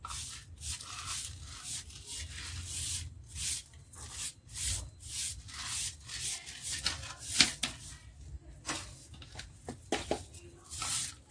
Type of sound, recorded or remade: recorded